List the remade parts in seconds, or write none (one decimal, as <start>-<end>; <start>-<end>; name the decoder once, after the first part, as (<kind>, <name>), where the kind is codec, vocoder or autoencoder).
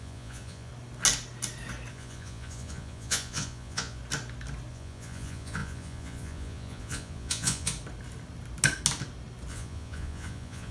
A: 0.0-0.7 (vocoder, Vocos); 1.9-4.0; 4.7-7.7; 9.5-10.7